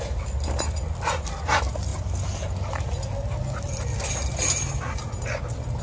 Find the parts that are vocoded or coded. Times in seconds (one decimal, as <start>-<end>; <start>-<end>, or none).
none